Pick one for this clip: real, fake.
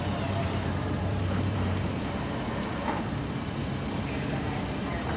fake